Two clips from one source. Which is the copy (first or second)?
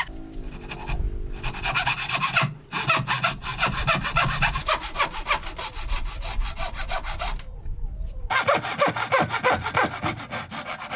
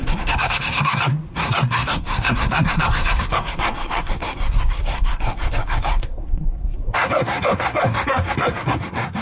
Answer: second